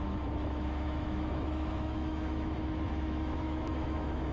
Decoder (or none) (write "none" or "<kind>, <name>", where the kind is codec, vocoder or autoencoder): autoencoder, DAC-VAE